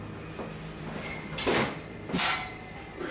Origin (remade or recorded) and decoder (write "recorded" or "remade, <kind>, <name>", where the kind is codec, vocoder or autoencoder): recorded